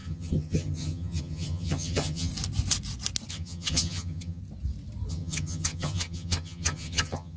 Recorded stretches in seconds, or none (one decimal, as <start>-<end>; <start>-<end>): 2.3-3.3; 4.4-5.1